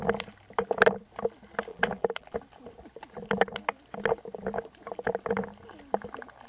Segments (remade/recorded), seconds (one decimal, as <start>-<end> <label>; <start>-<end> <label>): 0.0-1.7 recorded; 1.7-2.4 remade; 2.4-6.5 recorded